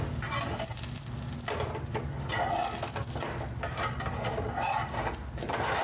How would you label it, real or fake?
real